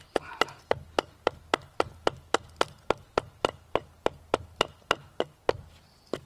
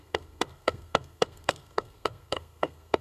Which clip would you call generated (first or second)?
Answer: second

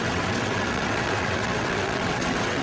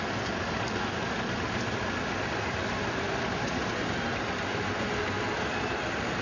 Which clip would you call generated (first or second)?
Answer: first